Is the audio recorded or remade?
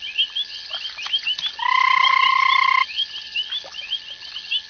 recorded